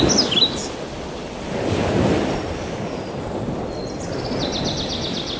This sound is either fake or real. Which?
real